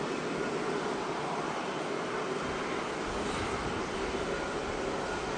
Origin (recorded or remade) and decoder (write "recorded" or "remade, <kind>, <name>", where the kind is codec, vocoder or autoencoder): recorded